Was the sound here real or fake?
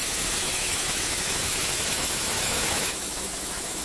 fake